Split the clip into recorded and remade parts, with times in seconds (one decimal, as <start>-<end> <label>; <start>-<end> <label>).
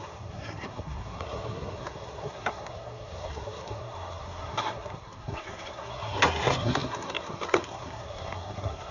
0.0-8.9 remade